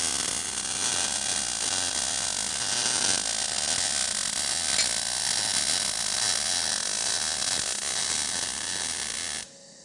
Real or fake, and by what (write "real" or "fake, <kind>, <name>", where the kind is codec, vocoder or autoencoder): real